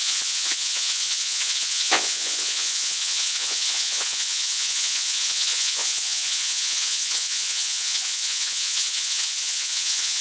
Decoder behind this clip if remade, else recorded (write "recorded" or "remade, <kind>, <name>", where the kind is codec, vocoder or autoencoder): remade, vocoder, Vocos